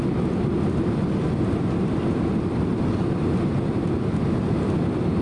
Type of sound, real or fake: real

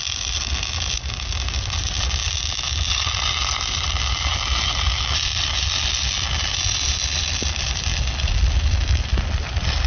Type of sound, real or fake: real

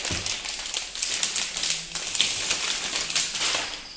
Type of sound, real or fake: real